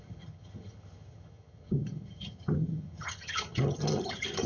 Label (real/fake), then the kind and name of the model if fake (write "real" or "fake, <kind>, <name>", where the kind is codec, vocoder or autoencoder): fake, vocoder, HiFi-GAN